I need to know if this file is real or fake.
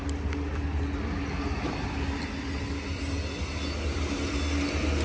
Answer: real